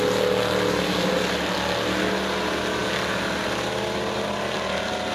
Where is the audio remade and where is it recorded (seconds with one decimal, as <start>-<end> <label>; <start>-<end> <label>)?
0.0-5.1 recorded